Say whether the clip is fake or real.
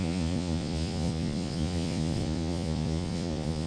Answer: fake